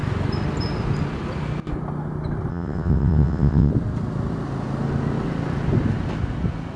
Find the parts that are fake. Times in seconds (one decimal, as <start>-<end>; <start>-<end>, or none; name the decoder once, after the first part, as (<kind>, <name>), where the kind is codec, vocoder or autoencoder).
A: 2.5-3.7 (vocoder, WaveNeXt)